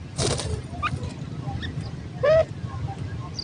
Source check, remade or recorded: recorded